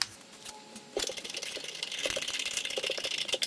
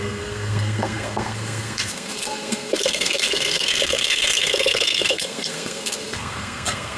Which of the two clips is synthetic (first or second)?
second